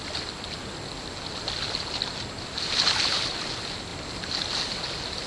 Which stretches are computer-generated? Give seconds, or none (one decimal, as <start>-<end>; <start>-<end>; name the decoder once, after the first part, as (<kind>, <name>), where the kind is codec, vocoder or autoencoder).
none